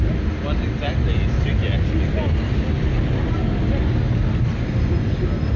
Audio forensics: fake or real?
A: real